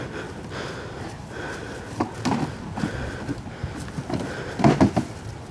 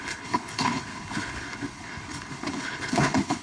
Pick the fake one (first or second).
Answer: second